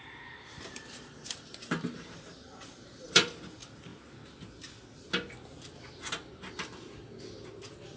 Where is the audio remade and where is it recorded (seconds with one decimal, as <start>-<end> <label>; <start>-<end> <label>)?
0.0-3.9 remade; 3.9-8.0 recorded